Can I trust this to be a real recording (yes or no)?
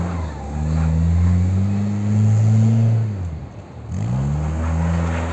yes